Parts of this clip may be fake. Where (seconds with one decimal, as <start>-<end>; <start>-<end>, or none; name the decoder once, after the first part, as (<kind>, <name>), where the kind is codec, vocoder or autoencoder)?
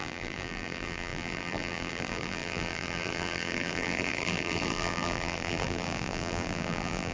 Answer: 0.0-7.1 (vocoder, BigVGAN v2)